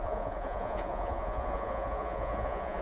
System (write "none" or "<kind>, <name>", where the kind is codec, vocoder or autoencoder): vocoder, Vocos